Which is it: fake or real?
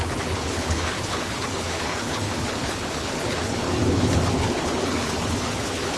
fake